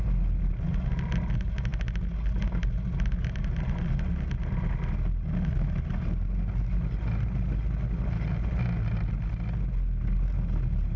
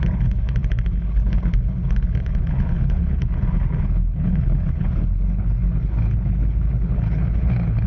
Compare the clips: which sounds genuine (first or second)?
first